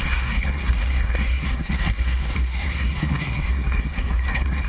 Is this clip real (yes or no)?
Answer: no